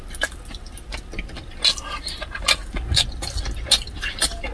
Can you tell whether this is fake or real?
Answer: real